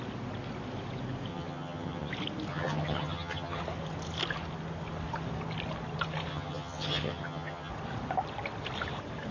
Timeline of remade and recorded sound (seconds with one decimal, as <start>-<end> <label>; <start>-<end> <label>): 0.0-1.3 recorded; 1.3-2.1 remade; 2.1-2.5 recorded; 2.5-3.6 remade; 3.6-6.3 recorded; 6.3-7.7 remade; 7.7-9.3 recorded